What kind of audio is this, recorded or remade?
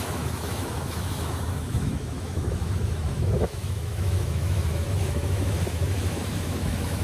remade